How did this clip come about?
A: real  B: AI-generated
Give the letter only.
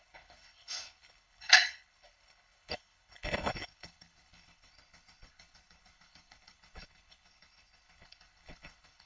B